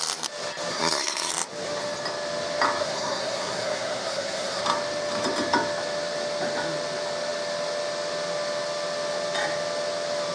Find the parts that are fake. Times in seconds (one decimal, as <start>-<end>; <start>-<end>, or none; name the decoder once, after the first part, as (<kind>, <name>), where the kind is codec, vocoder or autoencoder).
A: 0.7-1.3 (codec, SNAC); 2.8-4.6